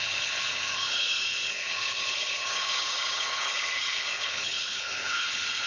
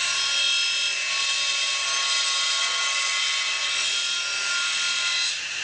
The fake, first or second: first